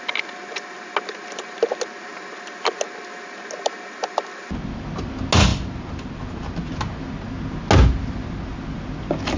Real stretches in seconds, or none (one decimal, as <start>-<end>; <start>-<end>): 0.0-9.4